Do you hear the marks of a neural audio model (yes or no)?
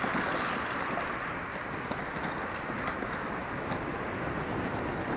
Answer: no